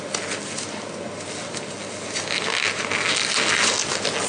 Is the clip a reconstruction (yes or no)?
no